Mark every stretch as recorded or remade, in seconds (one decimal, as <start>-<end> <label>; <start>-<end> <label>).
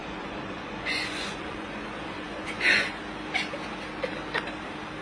0.0-3.0 remade; 3.0-5.0 recorded